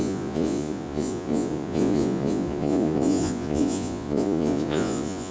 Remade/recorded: remade